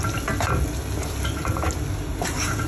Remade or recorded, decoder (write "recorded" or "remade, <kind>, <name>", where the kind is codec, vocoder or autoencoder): recorded